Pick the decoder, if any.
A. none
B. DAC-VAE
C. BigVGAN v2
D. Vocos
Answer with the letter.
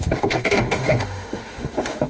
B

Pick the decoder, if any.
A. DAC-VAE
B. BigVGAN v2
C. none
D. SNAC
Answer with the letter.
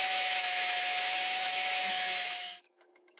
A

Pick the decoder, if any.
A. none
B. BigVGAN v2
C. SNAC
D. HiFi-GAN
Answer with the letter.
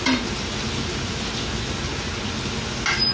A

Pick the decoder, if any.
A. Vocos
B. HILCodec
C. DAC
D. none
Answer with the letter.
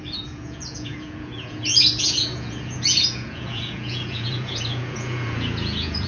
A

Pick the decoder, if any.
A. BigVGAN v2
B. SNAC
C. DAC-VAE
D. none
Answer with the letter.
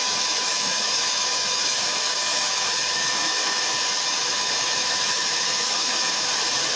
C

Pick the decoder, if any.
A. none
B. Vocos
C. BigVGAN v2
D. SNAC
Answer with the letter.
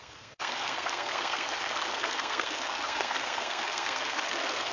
D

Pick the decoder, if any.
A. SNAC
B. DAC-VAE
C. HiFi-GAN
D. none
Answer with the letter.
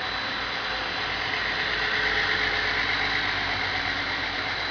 D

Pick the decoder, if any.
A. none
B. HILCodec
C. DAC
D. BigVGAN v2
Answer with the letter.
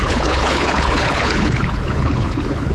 B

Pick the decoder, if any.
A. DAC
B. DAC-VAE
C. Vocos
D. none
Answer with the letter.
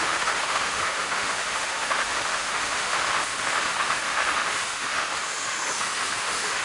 B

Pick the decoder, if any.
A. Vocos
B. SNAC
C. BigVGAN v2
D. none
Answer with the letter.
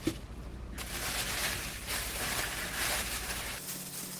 D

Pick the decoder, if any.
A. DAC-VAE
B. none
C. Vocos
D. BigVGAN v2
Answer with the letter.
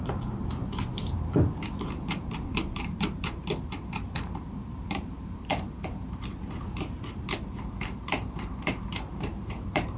D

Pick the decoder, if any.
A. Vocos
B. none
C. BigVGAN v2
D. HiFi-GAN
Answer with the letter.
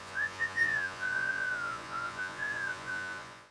A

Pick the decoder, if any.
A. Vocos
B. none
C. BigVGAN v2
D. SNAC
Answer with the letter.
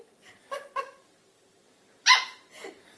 C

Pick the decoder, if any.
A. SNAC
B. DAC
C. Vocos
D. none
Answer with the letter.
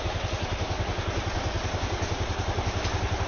D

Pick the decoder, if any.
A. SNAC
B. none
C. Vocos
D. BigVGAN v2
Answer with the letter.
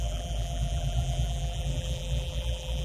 D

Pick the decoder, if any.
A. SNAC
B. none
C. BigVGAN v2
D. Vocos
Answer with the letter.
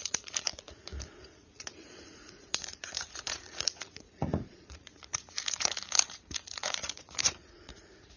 D